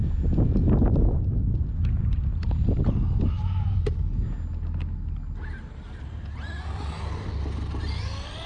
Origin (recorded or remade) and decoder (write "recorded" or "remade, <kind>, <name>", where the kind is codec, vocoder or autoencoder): recorded